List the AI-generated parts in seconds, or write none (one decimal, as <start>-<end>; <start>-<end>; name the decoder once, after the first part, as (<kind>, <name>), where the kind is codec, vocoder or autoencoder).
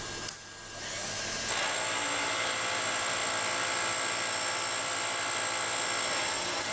none